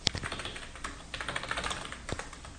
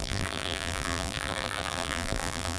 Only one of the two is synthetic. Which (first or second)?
second